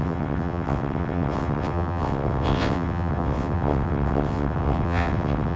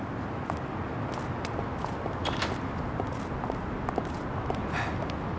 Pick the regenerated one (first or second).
first